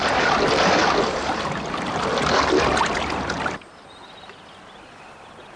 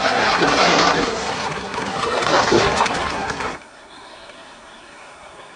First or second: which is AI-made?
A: second